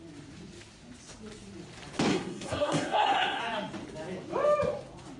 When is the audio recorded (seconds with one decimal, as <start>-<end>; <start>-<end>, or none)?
0.0-2.1; 3.4-5.2